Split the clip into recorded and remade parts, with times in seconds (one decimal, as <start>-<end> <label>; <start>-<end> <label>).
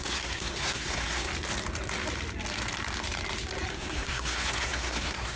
0.0-1.3 remade; 1.3-3.7 recorded; 3.7-5.4 remade